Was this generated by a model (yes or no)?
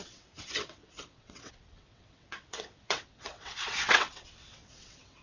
yes